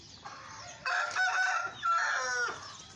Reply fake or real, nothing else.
real